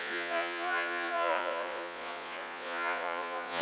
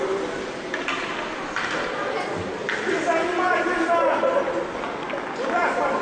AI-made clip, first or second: first